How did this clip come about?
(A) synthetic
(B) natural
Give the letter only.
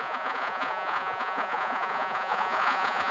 A